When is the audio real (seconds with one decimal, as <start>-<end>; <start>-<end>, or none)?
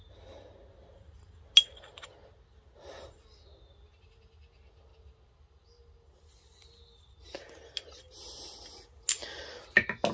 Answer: 0.0-10.1